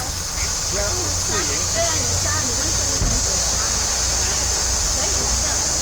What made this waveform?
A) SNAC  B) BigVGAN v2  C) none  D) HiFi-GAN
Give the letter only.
C